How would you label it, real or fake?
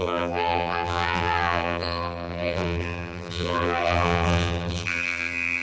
fake